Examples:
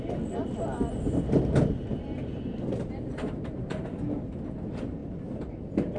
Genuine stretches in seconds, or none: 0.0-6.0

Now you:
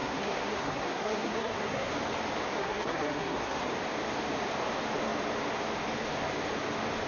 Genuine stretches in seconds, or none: 1.9-2.5; 3.7-7.1

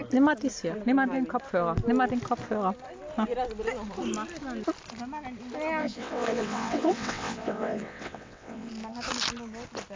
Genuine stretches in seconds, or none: 0.0-5.8; 8.7-10.0

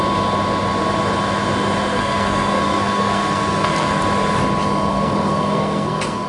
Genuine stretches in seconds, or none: 0.0-1.9; 4.0-4.9

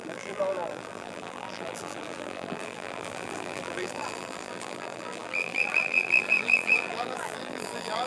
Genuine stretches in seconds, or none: none

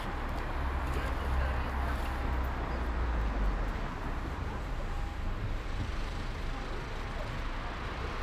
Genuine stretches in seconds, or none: 0.0-5.9; 6.5-8.2

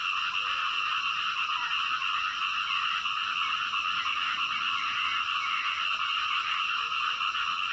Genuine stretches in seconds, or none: 0.0-0.6; 1.7-5.9; 7.1-7.7

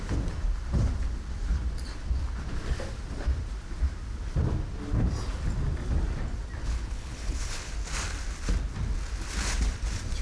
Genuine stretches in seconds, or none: 0.0-6.6; 7.7-10.2